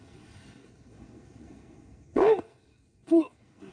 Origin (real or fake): fake